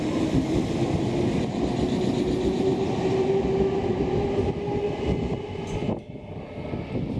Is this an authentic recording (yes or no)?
yes